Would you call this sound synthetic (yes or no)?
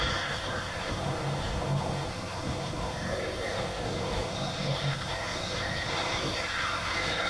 yes